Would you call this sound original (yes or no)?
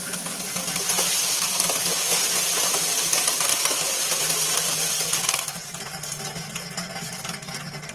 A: yes